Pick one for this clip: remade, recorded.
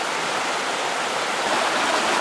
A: recorded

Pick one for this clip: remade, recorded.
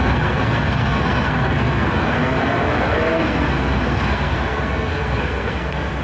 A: remade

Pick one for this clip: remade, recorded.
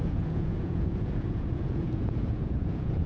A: remade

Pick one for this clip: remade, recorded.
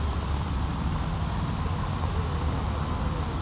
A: recorded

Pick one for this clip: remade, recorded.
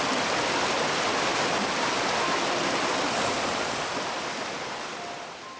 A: recorded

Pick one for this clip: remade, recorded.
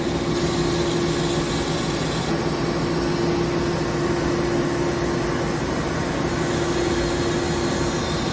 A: recorded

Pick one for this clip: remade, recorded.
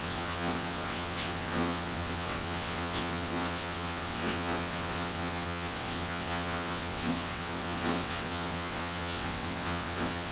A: remade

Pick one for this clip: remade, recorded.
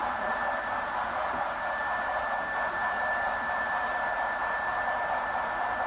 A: remade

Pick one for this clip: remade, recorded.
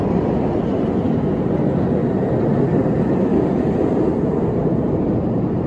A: recorded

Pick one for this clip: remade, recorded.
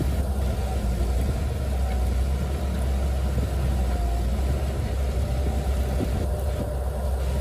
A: recorded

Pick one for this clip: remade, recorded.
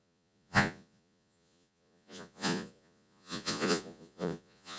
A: remade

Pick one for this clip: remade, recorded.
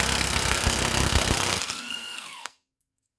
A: remade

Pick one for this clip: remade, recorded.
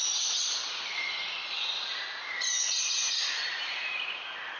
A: recorded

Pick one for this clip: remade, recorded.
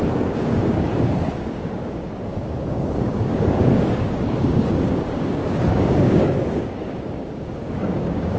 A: remade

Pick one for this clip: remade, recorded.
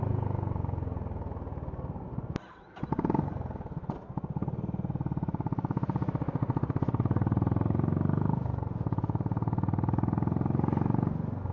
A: recorded